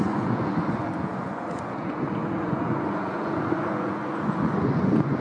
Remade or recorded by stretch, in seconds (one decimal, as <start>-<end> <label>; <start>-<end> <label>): 0.0-5.2 remade